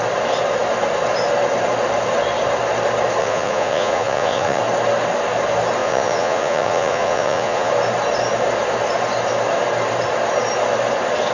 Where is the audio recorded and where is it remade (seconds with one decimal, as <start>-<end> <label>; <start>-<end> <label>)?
0.0-3.2 recorded; 3.2-4.6 remade; 4.6-5.8 recorded; 5.8-7.7 remade; 7.7-11.3 recorded